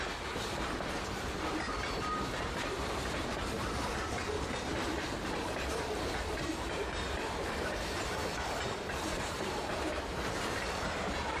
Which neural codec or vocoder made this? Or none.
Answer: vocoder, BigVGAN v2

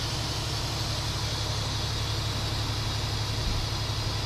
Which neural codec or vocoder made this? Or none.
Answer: none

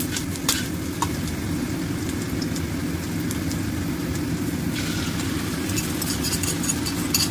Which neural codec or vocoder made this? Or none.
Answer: vocoder, BigVGAN v2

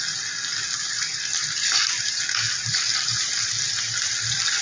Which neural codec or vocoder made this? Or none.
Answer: none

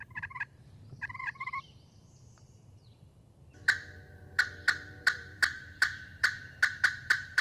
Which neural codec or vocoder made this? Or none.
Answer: vocoder, BigVGAN v2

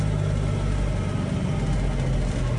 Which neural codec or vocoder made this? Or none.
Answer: none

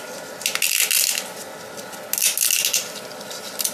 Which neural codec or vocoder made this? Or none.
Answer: none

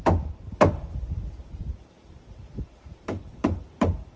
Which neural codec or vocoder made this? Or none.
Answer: vocoder, BigVGAN v2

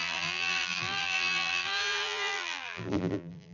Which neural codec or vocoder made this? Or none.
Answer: vocoder, BigVGAN v2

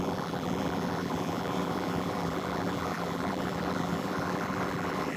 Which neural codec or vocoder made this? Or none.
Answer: vocoder, BigVGAN v2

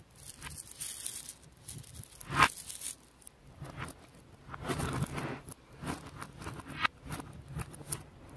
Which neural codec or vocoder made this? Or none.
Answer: none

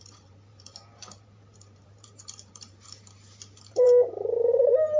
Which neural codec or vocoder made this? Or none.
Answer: vocoder, BigVGAN v2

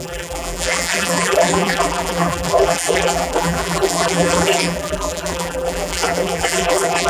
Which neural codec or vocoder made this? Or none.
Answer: vocoder, BigVGAN v2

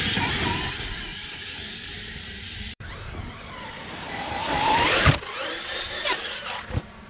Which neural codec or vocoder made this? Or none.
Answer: vocoder, BigVGAN v2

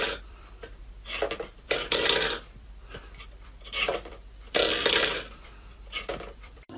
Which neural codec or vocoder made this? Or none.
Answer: vocoder, BigVGAN v2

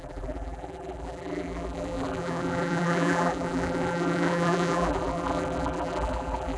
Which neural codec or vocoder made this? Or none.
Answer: vocoder, BigVGAN v2